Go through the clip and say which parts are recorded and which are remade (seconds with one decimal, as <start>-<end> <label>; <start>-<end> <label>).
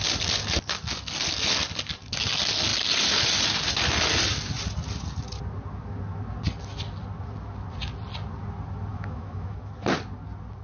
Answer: 0.0-8.9 recorded; 8.9-9.7 remade; 9.7-10.6 recorded